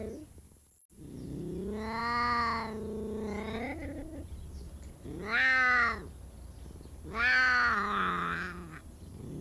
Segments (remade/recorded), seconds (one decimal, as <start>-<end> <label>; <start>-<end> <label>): 0.0-9.4 recorded

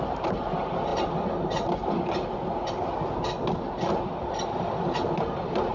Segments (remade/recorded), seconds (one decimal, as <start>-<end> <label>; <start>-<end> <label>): 0.0-5.7 recorded

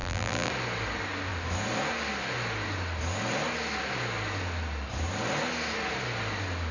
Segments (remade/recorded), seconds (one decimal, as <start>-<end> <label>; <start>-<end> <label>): 0.0-0.5 remade; 0.5-6.7 recorded

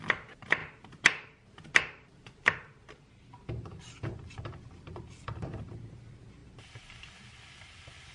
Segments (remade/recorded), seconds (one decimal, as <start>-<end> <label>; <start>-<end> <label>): 0.0-8.1 remade

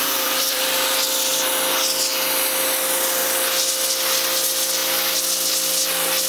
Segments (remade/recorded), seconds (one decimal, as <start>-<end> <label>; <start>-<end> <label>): 0.0-0.6 remade; 0.6-6.3 recorded

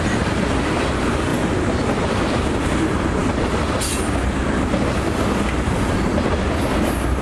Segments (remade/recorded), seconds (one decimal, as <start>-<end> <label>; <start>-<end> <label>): 0.0-7.2 recorded

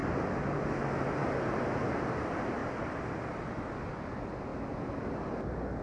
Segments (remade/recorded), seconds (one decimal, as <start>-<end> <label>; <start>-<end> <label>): 0.0-0.7 remade; 0.7-2.6 recorded; 2.6-3.5 remade; 3.5-5.8 recorded